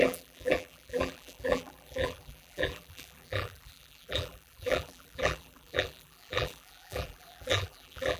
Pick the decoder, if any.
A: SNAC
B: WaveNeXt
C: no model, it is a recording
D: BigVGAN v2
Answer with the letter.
D